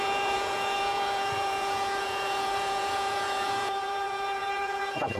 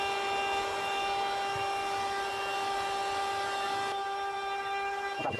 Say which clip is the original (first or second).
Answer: second